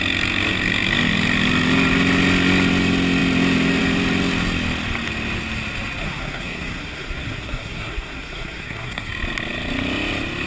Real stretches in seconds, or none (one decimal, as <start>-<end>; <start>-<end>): 0.0-6.0; 9.1-10.5